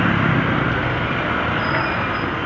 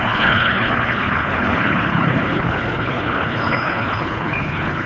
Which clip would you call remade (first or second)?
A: second